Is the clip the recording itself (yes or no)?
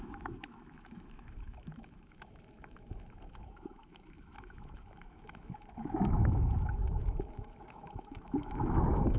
no